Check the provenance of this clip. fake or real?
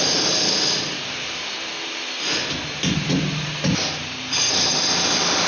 real